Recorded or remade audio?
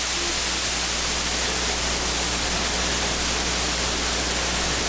recorded